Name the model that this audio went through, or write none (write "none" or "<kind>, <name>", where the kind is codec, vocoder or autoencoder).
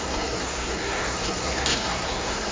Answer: codec, SNAC